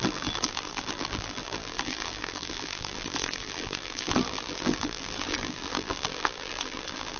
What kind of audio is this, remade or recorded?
remade